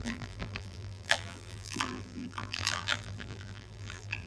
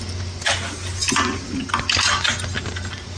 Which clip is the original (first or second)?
second